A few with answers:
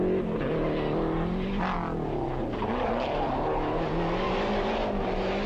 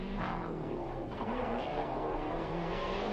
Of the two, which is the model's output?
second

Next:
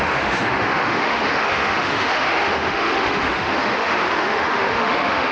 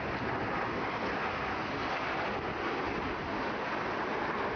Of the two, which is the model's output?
first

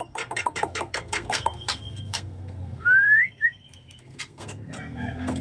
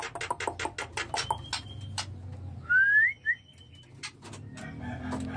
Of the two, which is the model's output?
first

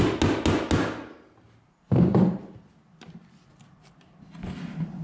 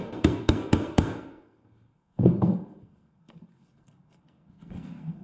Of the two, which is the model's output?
second